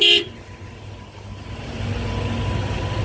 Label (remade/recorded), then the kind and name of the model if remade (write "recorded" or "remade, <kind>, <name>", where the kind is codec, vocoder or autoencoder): recorded